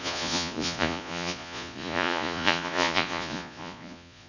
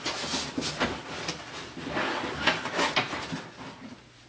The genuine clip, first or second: second